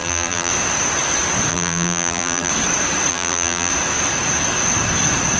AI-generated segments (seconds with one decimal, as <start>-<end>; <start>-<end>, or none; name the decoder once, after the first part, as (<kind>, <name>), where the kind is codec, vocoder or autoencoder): 0.0-0.5 (vocoder, BigVGAN v2); 1.5-2.5; 3.1-3.7